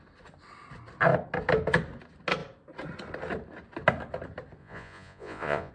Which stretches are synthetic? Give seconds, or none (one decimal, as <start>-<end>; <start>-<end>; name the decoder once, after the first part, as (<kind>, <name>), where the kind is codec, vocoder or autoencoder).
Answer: 4.6-5.7 (vocoder, Vocos)